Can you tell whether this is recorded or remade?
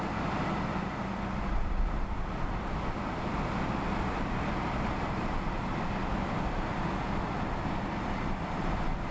recorded